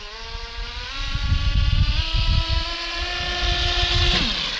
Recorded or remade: recorded